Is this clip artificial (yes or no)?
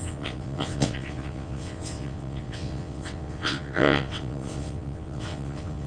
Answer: yes